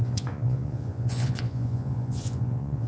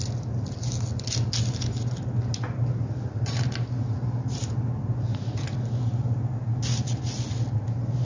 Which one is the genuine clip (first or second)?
second